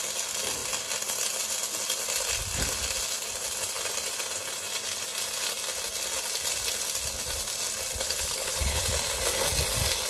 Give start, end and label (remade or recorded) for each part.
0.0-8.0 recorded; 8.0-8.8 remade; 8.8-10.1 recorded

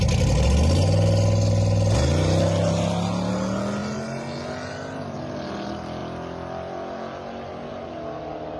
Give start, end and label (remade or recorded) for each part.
0.0-8.6 recorded

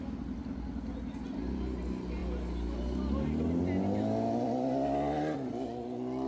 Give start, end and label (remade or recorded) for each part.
0.0-6.3 recorded

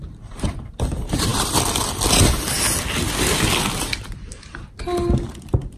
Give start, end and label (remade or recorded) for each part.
0.0-4.6 remade; 4.6-5.3 recorded; 5.3-5.8 remade

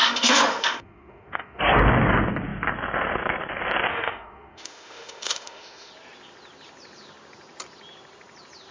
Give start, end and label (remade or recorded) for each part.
0.0-1.6 remade; 1.6-3.9 recorded; 3.9-5.9 remade; 5.9-8.7 recorded

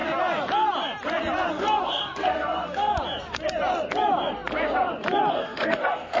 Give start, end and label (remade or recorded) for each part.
0.0-1.5 recorded; 1.5-2.9 remade; 2.9-5.3 recorded; 5.3-6.2 remade

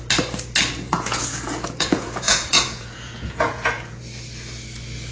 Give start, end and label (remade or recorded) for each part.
0.0-0.9 recorded; 0.9-4.0 remade; 4.0-5.1 recorded